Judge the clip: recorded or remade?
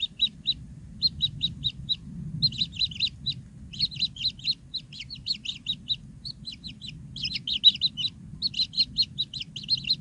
recorded